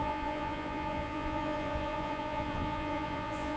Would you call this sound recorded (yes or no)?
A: no